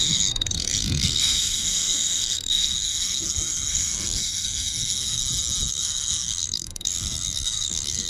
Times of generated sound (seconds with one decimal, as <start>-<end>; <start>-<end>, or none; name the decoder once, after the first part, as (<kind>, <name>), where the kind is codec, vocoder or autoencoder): 0.0-5.2 (codec, SNAC); 5.7-8.1